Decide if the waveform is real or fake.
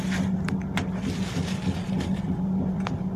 real